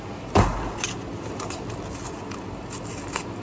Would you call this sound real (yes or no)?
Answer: yes